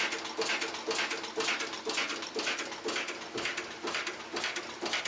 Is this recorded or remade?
recorded